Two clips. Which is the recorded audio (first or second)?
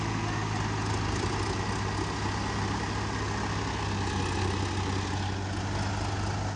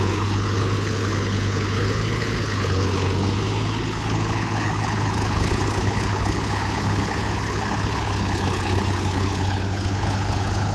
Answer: first